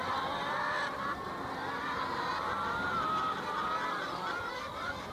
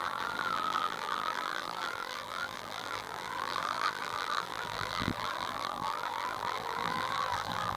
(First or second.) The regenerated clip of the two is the second